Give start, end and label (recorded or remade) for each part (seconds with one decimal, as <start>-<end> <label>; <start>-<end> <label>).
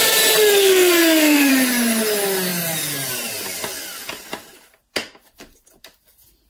0.0-0.6 recorded; 0.6-1.5 remade; 1.5-6.5 recorded